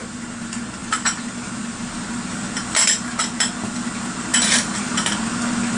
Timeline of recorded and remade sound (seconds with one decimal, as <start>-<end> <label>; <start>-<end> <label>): 0.0-0.8 recorded; 0.8-1.8 remade; 1.8-4.3 recorded; 4.3-5.2 remade; 5.2-5.8 recorded